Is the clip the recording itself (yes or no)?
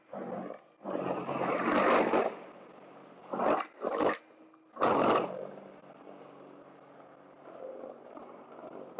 yes